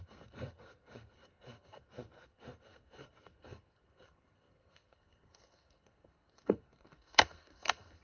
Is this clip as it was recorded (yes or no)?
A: no